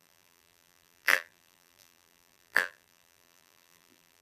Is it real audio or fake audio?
fake